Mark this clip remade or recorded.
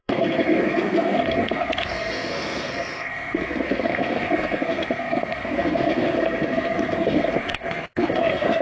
remade